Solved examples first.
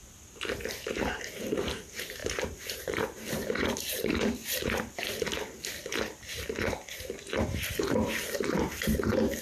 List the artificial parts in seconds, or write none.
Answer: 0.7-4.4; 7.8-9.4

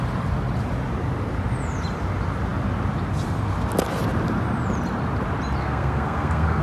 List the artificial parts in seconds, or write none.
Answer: 5.6-6.6

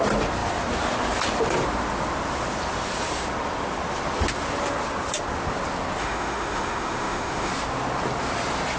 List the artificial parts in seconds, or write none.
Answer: 6.0-7.5

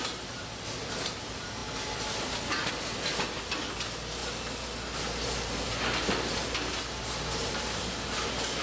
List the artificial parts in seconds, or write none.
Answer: none

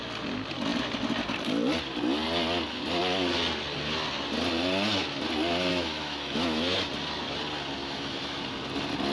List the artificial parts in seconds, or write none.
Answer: 5.7-6.9; 7.8-8.4

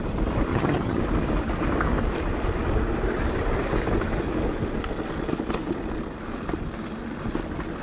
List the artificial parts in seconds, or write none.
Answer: 0.5-1.0

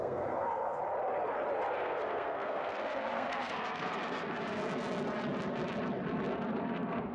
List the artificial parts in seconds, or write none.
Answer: 0.0-0.8; 1.7-4.6; 6.5-7.1